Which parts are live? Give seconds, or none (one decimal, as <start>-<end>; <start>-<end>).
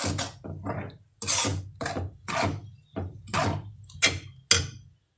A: 0.0-5.2